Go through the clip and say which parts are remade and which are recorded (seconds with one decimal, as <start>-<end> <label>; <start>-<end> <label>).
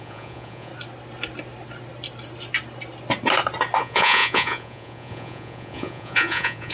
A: 0.0-0.7 remade; 0.7-3.8 recorded; 3.8-6.7 remade